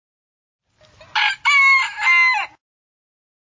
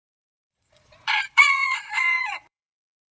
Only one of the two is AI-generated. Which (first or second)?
second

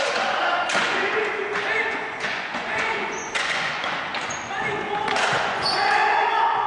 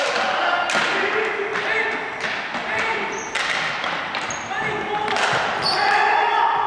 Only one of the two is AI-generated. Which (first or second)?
first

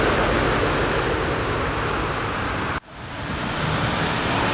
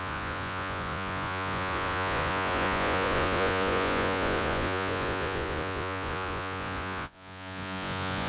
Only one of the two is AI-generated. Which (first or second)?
second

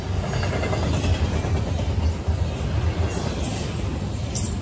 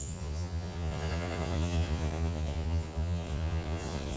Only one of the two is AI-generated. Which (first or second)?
second